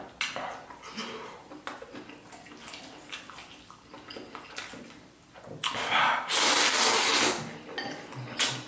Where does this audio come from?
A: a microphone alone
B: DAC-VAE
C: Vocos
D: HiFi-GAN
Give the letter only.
A